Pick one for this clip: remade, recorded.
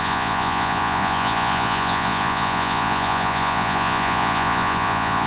remade